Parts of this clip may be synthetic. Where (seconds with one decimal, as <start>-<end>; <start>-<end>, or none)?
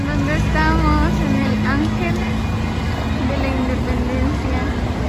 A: none